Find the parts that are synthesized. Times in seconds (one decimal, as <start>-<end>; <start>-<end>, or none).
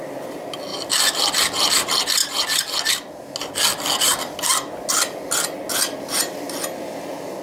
0.7-1.7